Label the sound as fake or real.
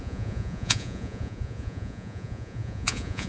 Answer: fake